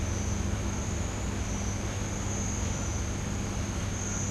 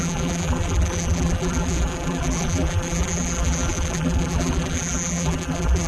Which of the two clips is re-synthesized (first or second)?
second